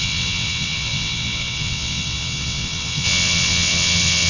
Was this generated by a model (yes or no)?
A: yes